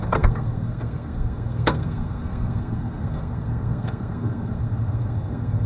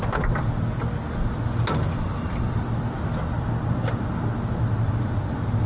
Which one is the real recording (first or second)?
second